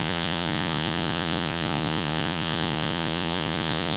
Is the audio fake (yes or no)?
yes